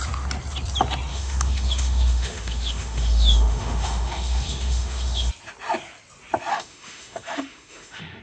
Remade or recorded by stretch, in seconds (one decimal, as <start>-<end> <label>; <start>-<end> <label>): 0.0-1.1 recorded; 1.1-5.3 remade; 5.3-6.5 recorded; 6.5-8.2 remade